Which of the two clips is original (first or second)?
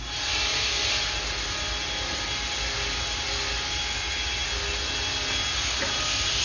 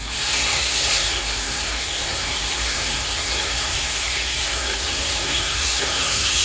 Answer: first